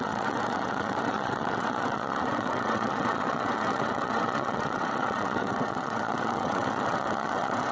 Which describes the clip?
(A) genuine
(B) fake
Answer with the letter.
B